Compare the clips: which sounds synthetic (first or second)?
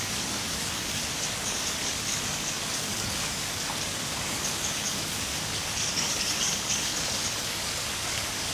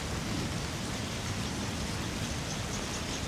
first